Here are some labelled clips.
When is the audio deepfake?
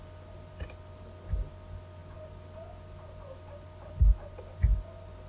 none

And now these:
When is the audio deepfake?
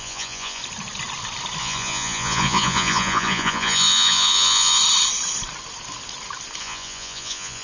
0.0-0.6 (vocoder, Vocos); 1.6-4.8; 6.6-7.6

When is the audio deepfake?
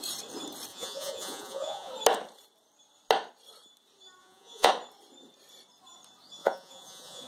0.7-1.9 (vocoder, Vocos); 4.2-4.7; 6.4-7.3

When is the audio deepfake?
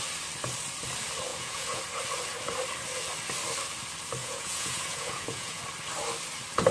1.3-1.8 (vocoder, Vocos); 4.2-5.6